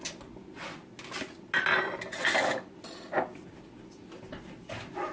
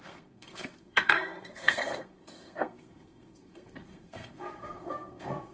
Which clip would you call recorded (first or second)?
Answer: first